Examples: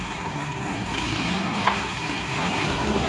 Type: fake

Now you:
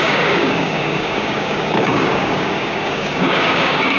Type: fake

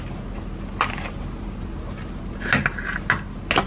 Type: real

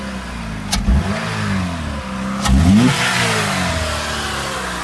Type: real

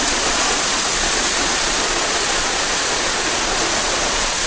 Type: fake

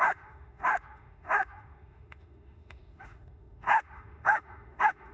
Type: fake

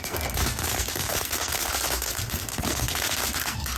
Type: fake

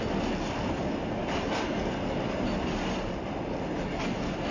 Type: real